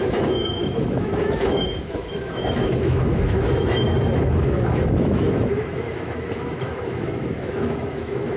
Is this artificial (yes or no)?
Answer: yes